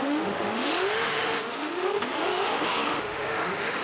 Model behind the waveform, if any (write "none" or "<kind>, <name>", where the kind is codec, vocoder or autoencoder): autoencoder, DAC-VAE